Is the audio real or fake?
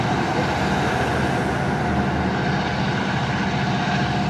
real